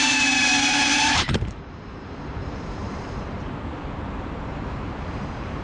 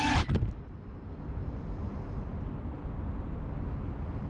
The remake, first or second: first